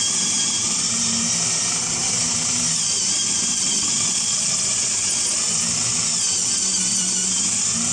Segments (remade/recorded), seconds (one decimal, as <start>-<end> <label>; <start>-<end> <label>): 0.0-3.5 recorded; 3.5-5.1 remade; 5.1-7.9 recorded